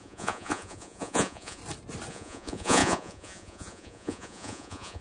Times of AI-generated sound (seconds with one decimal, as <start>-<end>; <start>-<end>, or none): 0.0-1.6; 2.1-5.0